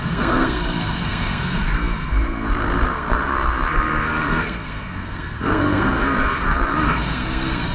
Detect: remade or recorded remade